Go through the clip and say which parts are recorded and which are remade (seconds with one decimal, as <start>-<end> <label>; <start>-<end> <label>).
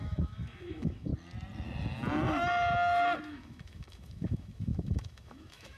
0.0-1.1 remade; 1.1-3.2 recorded; 3.2-5.8 remade